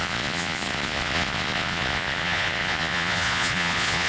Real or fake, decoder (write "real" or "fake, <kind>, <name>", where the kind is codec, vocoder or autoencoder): fake, vocoder, Vocos